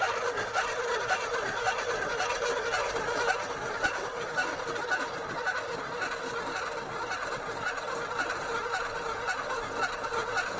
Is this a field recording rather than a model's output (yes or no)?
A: yes